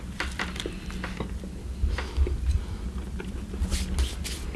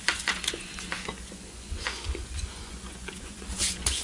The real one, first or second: first